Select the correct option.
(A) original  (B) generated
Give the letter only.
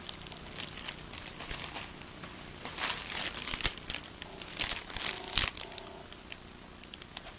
A